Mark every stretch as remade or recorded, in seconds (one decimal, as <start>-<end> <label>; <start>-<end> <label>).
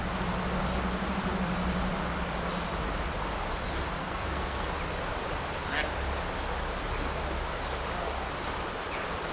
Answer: 0.0-4.0 recorded; 4.0-4.7 remade; 4.7-9.3 recorded